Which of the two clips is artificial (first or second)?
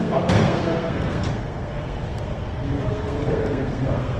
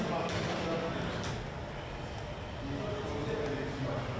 first